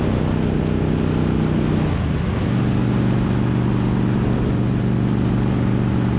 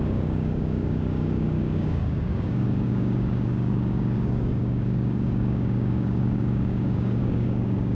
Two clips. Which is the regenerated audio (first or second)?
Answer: second